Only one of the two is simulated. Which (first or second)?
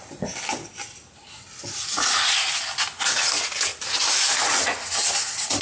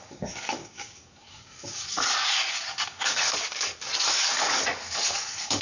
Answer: second